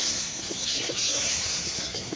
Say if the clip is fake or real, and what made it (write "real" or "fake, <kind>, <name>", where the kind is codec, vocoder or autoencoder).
fake, codec, SNAC